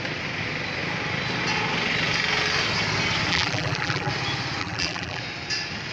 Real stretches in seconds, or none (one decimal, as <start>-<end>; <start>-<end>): 0.0-3.3; 4.1-4.6; 5.2-5.9